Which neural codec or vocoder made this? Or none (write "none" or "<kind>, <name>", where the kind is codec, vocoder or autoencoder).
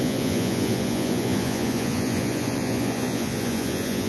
vocoder, Vocos